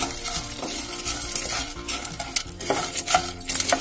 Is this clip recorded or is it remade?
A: recorded